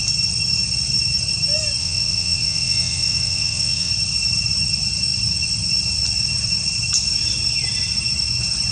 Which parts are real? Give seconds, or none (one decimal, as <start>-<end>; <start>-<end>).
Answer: 0.0-1.8; 3.9-8.7